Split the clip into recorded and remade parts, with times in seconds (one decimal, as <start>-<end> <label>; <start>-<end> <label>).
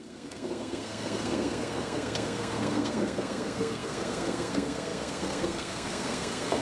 0.0-6.6 remade